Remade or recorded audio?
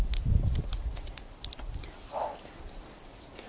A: recorded